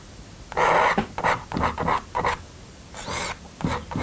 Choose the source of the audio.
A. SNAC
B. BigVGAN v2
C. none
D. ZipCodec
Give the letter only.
C